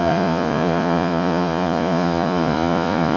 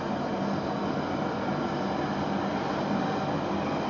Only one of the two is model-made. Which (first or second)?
first